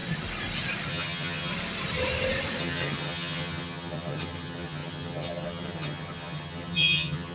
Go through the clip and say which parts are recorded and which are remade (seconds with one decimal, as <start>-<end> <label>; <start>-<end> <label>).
0.0-0.9 recorded; 0.9-1.5 remade; 1.5-2.6 recorded; 2.6-7.3 remade